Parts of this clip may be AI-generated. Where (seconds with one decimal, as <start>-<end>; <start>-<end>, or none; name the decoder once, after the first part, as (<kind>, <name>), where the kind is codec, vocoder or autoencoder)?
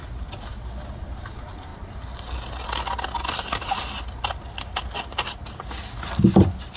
none